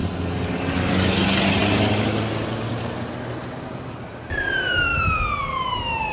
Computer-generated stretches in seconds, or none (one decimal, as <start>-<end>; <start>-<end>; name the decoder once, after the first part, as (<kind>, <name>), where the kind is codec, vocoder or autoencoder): none